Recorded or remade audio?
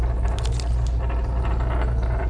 recorded